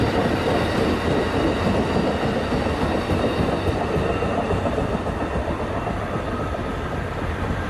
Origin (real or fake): real